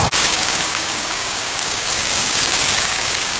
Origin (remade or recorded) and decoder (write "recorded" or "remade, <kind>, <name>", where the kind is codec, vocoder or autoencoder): remade, codec, DAC